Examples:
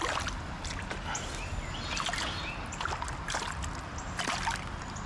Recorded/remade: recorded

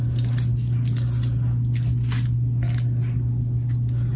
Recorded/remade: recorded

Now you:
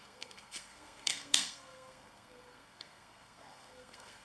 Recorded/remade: remade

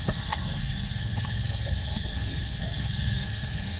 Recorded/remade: remade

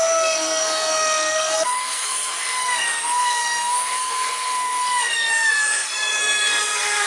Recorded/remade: remade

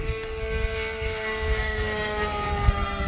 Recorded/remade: remade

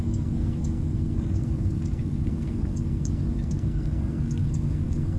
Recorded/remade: remade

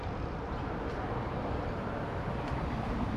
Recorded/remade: recorded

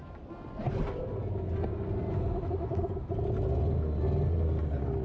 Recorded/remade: recorded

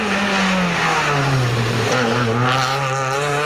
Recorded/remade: recorded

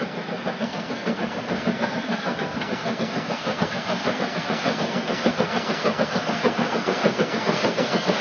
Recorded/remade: remade